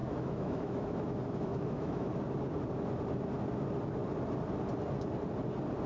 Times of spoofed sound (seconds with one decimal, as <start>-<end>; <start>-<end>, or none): 0.0-2.1